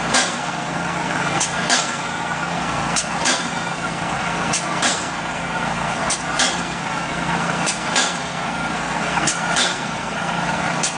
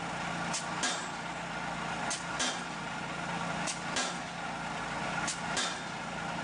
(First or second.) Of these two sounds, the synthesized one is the first